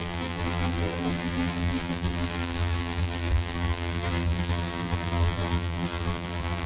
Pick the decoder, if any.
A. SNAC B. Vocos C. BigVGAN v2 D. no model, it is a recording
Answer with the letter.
C